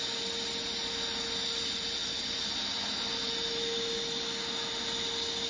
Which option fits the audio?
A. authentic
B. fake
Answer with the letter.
A